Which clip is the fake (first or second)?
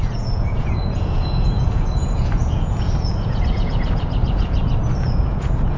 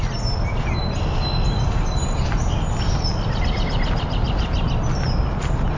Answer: first